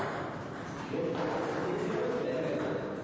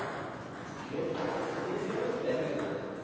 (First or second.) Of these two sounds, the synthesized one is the second